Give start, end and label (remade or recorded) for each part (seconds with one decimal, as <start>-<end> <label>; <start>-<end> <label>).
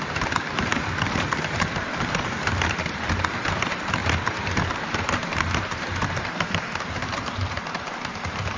0.0-8.6 remade